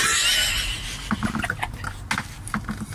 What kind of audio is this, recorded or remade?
recorded